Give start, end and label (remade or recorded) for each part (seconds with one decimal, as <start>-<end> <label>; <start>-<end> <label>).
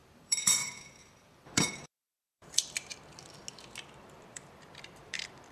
0.0-2.9 remade; 2.9-4.0 recorded; 4.0-5.5 remade